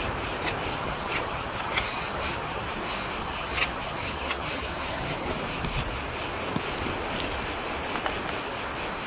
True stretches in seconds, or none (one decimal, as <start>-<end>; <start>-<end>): 0.0-0.7; 2.7-3.2; 5.3-9.1